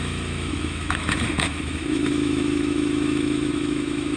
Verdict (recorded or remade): remade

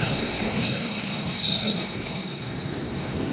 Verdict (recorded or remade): remade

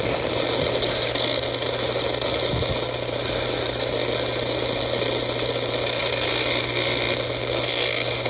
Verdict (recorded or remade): recorded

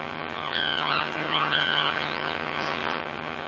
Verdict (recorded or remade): remade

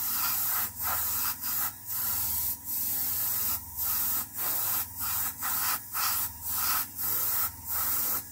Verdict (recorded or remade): remade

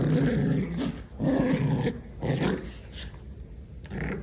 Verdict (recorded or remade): recorded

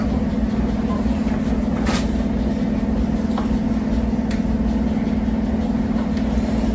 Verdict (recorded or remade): recorded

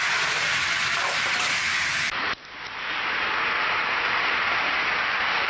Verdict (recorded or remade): recorded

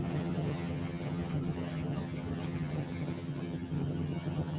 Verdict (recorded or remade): remade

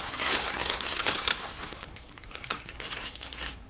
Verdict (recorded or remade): remade